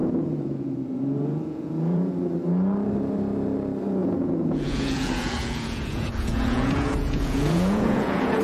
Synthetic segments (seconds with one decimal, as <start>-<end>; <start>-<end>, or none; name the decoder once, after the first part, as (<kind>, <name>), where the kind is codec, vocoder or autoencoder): 0.0-2.1 (vocoder, Vocos); 4.0-8.4